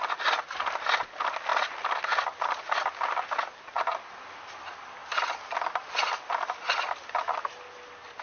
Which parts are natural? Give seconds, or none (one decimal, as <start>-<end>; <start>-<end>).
0.0-8.2